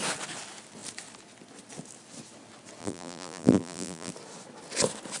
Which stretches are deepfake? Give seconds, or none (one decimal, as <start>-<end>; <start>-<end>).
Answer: 2.8-4.1